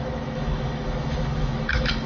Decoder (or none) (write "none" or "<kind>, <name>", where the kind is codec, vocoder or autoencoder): autoencoder, DAC-VAE